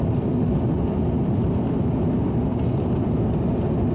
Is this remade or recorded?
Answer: recorded